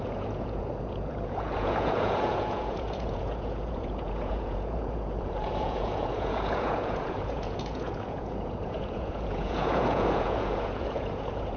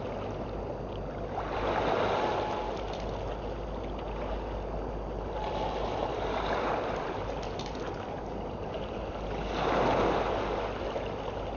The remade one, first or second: first